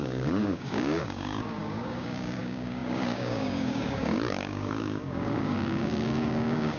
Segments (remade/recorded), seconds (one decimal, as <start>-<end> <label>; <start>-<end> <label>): 0.0-6.8 remade